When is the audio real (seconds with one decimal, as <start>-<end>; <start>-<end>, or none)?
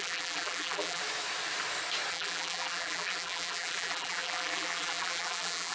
1.0-2.1